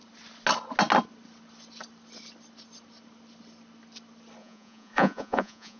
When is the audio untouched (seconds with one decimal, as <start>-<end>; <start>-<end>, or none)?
0.0-4.4